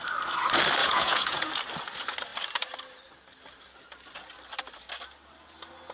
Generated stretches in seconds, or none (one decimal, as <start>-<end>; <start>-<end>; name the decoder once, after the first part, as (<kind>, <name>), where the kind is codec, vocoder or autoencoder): 0.8-1.5 (vocoder, Vocos)